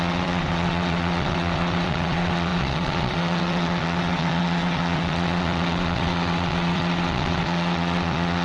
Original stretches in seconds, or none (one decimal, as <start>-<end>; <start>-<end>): none